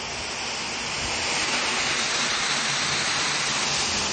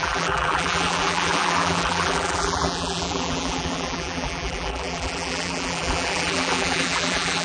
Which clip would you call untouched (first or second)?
first